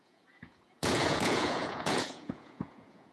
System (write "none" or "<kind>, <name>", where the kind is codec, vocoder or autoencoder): vocoder, Vocos